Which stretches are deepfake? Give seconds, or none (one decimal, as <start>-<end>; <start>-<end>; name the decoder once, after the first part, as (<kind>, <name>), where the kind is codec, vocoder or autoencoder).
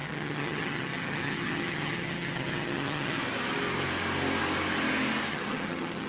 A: 0.0-3.2 (vocoder, HiFi-GAN); 5.3-6.1